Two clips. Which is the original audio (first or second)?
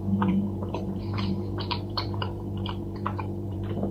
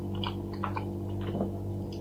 second